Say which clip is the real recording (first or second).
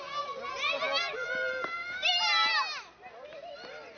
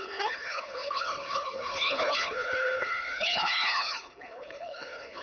first